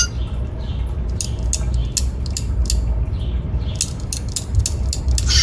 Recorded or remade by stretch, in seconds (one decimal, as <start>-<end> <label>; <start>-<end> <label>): 0.0-5.4 recorded